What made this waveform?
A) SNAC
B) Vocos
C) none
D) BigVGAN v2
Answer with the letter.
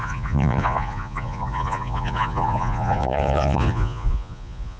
B